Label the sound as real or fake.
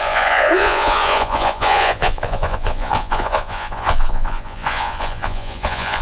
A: fake